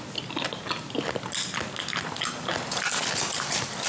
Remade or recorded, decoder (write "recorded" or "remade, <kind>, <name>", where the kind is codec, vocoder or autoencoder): recorded